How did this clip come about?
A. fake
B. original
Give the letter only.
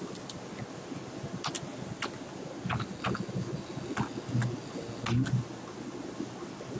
B